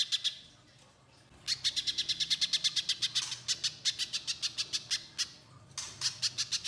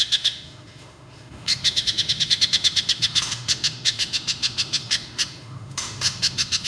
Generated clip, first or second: second